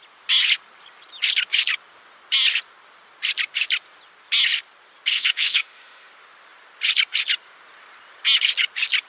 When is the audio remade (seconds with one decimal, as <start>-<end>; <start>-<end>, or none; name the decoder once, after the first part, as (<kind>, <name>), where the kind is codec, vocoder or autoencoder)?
5.1-6.1 (autoencoder, DAC-VAE)